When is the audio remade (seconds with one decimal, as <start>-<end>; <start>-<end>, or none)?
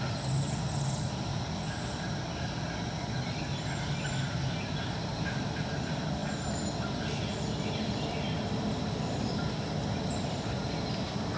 none